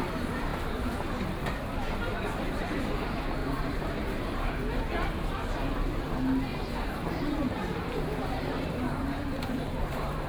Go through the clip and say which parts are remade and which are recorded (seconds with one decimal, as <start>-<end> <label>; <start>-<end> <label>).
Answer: 0.0-3.4 recorded; 3.4-4.8 remade; 4.8-6.5 recorded; 6.5-10.3 remade